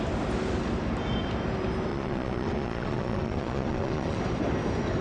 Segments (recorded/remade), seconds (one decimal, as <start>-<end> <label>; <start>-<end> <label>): 0.0-1.9 recorded; 1.9-4.2 remade; 4.2-5.0 recorded